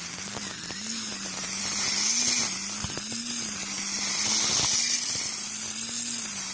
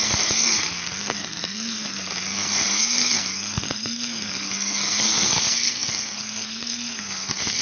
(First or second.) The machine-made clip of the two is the second